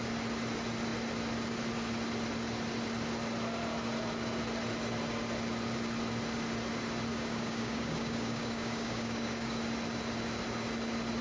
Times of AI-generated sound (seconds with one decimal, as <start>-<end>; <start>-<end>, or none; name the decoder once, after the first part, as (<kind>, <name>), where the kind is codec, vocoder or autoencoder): 7.1-9.6 (codec, DAC)

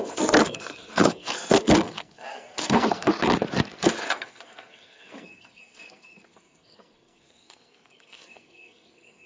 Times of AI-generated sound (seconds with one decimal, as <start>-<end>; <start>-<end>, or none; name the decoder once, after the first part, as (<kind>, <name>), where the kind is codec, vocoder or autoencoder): 0.0-3.1 (codec, SNAC); 3.7-9.3